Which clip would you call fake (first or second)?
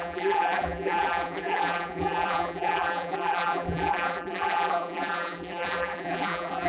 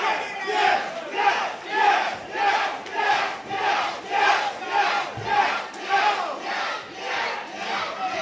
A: first